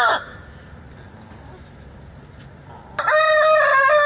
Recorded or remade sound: recorded